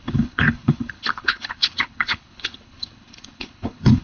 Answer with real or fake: fake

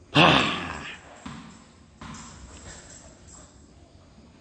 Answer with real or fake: real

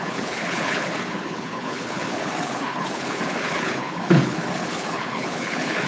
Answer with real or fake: fake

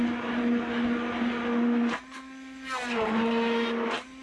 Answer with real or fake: real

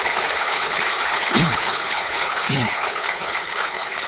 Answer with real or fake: fake